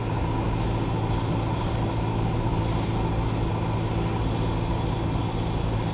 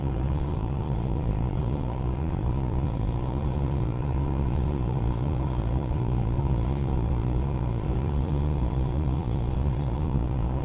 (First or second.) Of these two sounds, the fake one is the second